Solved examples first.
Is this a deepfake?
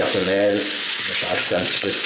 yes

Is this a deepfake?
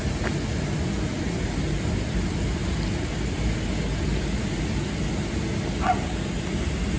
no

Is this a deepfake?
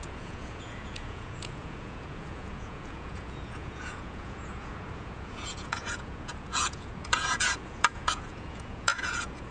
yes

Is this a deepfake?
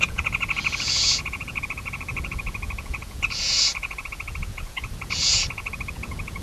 yes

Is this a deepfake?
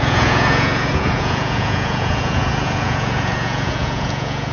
yes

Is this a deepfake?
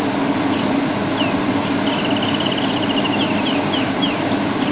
no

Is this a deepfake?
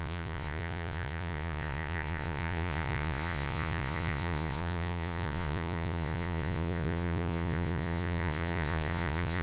yes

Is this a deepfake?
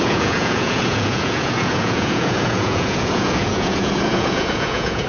yes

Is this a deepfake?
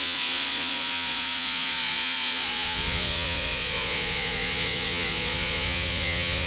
yes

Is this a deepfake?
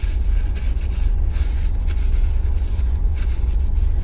yes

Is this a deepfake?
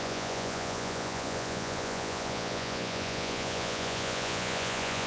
yes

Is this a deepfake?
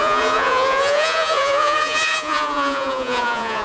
yes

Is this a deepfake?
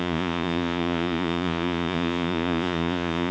yes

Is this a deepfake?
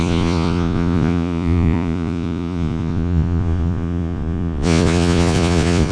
yes